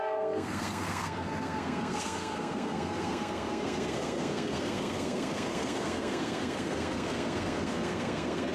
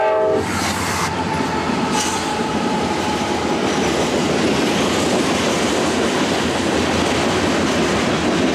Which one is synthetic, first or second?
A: first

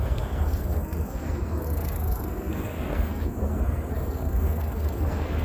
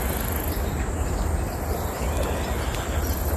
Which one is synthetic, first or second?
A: first